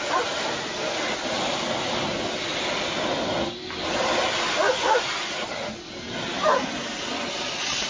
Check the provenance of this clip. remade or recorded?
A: recorded